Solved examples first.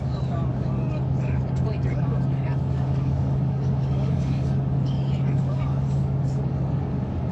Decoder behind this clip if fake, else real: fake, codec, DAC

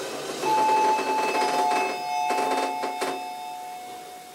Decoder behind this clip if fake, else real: real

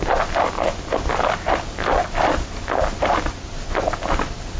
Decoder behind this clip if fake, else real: real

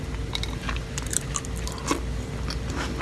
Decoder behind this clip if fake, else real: real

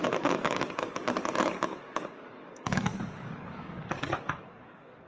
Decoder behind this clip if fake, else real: fake, codec, DAC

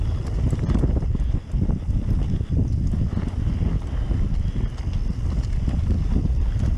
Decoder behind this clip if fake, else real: real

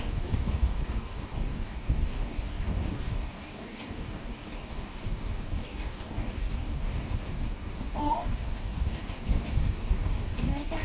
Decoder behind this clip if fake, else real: fake, codec, DAC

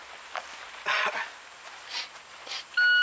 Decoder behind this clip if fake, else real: real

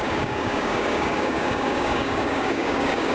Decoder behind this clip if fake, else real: fake, codec, DAC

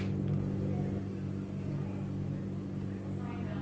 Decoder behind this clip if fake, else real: real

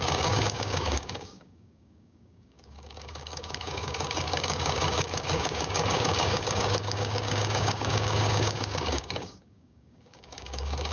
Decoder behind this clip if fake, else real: fake, codec, DAC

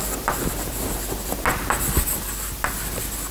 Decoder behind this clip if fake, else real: real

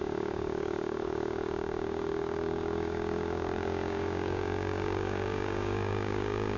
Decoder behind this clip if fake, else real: fake, codec, DAC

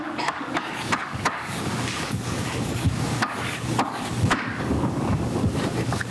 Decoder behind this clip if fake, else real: fake, codec, DAC